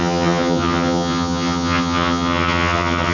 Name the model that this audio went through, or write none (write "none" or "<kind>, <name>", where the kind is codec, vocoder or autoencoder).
vocoder, HiFi-GAN